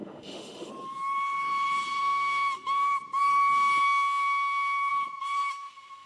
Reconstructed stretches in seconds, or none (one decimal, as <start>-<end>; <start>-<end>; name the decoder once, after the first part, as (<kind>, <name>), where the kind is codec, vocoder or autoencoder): 0.0-0.7 (autoencoder, DAC-VAE); 2.0-2.9; 3.8-4.9; 5.5-6.1

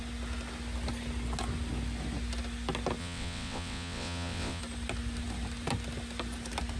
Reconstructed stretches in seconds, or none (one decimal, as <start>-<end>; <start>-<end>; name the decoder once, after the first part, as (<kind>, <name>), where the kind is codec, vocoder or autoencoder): 3.0-4.6 (vocoder, WaveNeXt)

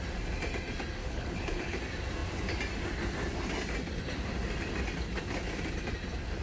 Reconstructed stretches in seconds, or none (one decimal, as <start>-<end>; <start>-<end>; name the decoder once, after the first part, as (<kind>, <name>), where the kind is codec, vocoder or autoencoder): 1.0-1.8 (codec, HILCodec)

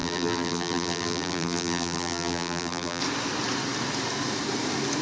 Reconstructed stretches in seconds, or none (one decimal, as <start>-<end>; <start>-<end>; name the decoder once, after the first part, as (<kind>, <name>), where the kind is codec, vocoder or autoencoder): 0.0-3.0 (vocoder, BigVGAN v2)

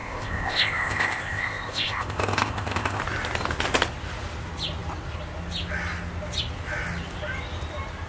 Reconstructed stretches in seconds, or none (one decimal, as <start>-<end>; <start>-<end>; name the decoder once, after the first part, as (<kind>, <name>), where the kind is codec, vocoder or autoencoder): 0.0-3.0 (codec, ZipCodec)

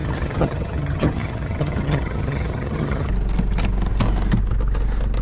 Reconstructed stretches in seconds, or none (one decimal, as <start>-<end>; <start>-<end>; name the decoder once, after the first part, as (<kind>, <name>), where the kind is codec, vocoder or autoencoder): 0.0-3.1 (vocoder, HiFi-GAN)